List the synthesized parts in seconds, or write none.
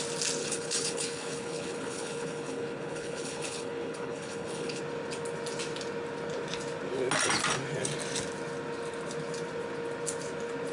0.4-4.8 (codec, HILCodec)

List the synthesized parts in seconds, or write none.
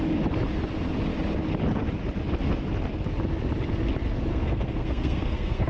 4.3-5.7 (codec, SNAC)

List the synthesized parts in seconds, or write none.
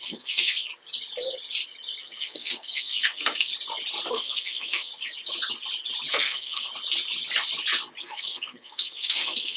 0.0-0.7 (codec, SNAC); 2.0-3.5; 4.1-4.9; 6.1-6.7; 8.0-9.6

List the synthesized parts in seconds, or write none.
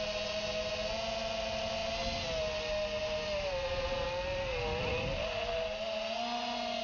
none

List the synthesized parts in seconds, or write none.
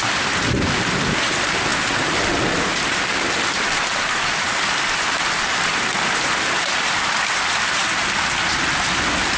none